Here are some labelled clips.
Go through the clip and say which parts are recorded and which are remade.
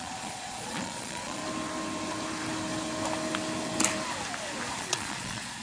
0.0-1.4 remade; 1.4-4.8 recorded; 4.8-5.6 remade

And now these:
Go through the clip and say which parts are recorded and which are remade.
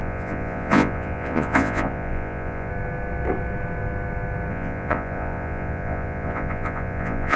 0.0-2.7 remade; 2.7-4.5 recorded; 4.5-7.4 remade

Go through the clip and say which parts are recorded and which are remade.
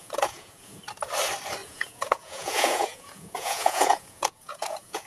0.0-0.8 remade; 0.8-1.6 recorded; 1.6-5.1 remade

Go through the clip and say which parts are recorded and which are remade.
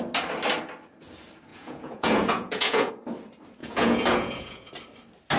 0.0-1.5 recorded; 1.5-2.9 remade; 2.9-3.6 recorded; 3.6-4.7 remade; 4.7-5.4 recorded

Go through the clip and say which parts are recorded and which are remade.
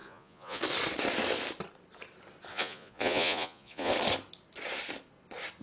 0.0-0.6 remade; 0.6-2.5 recorded; 2.5-3.9 remade; 3.9-5.6 recorded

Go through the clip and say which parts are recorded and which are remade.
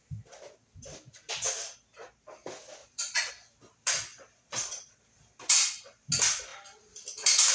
0.0-2.8 recorded; 2.8-3.3 remade; 3.3-4.1 recorded; 4.1-5.0 remade; 5.0-7.5 recorded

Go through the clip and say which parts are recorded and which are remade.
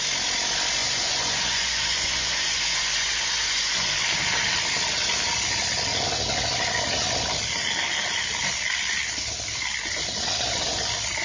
0.0-0.8 recorded; 0.8-3.9 remade; 3.9-11.2 recorded